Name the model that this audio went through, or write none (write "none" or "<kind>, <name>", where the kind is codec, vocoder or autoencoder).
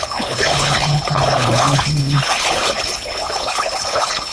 codec, HILCodec